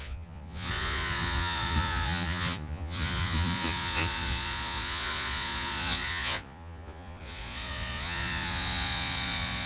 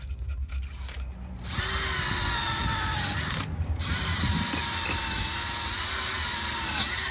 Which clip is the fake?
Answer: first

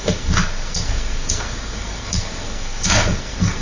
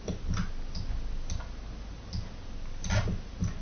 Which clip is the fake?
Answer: first